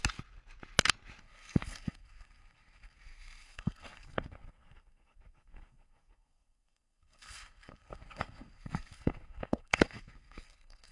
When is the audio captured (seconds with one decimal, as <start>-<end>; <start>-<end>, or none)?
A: 0.0-1.2